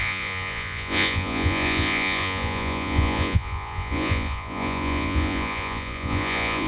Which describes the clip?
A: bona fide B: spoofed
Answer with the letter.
B